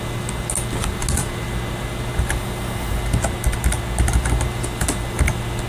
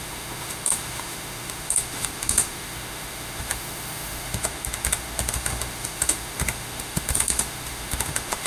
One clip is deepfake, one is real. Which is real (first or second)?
first